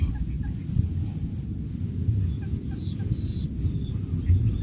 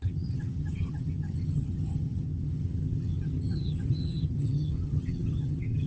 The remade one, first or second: second